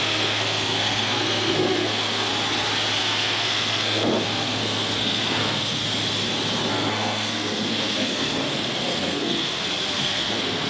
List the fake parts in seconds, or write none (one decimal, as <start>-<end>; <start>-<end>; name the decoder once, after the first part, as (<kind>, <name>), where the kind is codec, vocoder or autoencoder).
0.0-2.3 (codec, SNAC); 3.0-5.8; 6.7-10.7